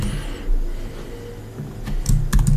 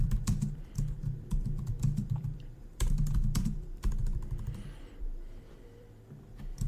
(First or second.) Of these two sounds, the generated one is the second